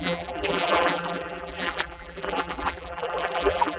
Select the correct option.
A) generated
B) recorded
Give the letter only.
A